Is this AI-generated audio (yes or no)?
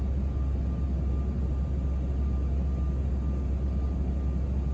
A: no